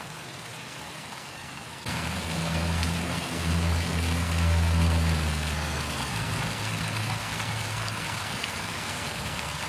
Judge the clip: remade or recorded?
remade